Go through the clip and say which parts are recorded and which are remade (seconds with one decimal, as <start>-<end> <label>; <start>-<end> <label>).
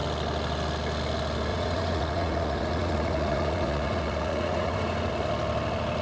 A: 0.0-1.5 recorded; 1.5-5.1 remade; 5.1-6.0 recorded